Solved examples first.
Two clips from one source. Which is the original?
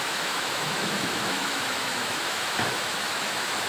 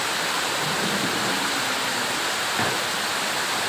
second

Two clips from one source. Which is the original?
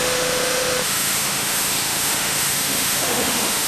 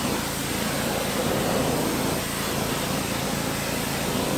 second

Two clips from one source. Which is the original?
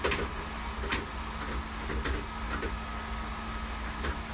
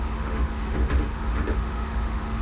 first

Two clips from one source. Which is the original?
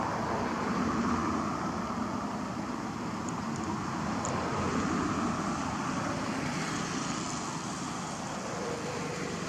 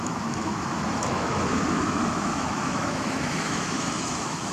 first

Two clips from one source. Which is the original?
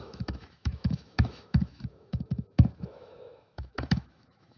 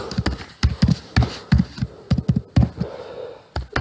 second